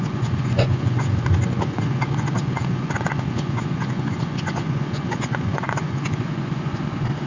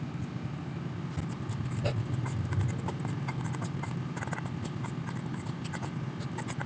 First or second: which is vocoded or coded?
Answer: first